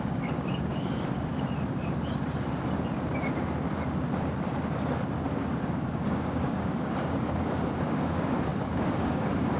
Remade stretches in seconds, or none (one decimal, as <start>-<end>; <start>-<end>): 0.0-1.3; 5.4-9.6